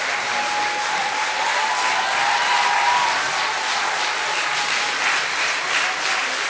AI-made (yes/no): no